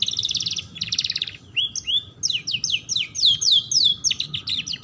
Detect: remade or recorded recorded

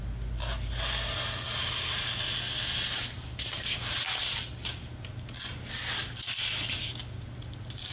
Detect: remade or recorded recorded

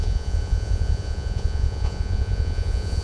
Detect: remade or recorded remade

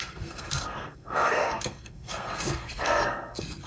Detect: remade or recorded remade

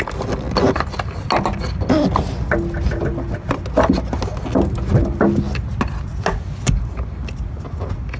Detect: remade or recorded recorded